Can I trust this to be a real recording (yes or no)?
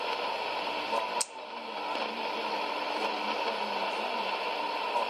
yes